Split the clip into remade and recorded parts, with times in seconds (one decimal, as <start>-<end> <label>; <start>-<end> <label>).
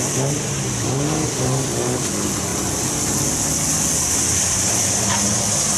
0.0-5.8 recorded